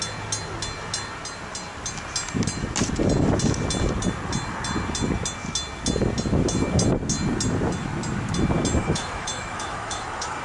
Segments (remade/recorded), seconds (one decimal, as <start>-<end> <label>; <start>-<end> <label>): 0.0-8.8 recorded; 8.8-10.4 remade